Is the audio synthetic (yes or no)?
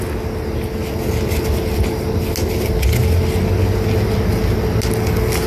no